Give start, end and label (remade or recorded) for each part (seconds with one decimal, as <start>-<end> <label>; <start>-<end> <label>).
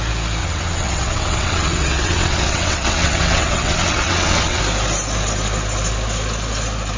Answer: 0.0-0.4 recorded; 0.4-4.6 remade; 4.6-7.0 recorded